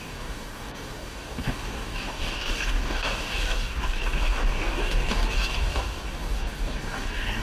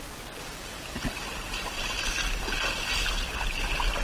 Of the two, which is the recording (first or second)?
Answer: second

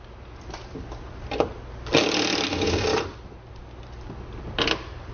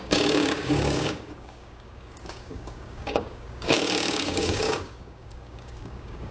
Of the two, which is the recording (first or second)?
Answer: first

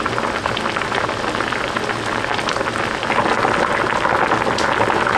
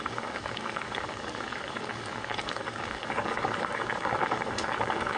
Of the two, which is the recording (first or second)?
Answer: first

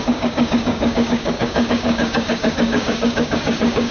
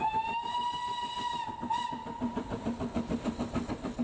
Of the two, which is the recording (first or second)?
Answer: second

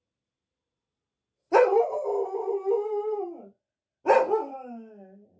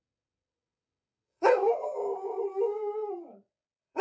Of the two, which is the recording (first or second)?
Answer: first